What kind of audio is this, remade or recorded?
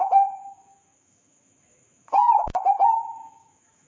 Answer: remade